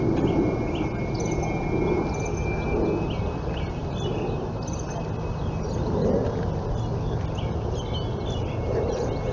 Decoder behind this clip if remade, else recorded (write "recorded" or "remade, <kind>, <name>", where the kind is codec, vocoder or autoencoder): recorded